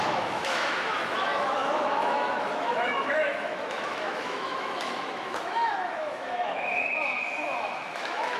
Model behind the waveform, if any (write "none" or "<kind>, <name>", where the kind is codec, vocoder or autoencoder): autoencoder, DAC-VAE